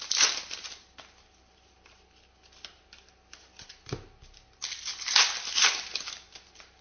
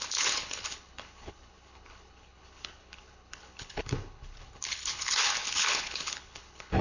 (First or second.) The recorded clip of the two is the first